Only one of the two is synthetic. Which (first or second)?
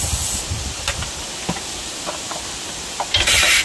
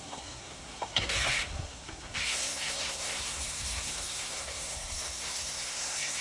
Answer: second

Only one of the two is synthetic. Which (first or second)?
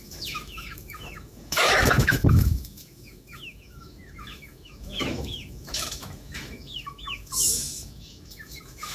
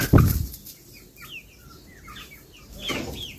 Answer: first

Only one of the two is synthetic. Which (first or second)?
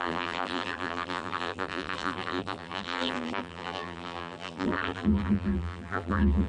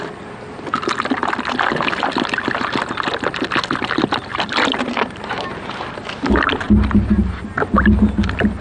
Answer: first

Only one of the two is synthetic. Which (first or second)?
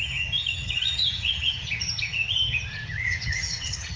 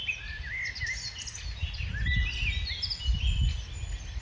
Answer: first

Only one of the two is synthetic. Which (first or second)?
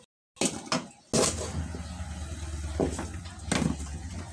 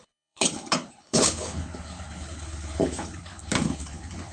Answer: second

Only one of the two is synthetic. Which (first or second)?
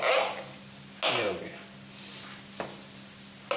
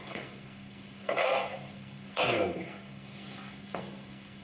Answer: second